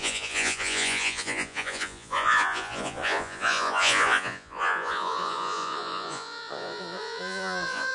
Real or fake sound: fake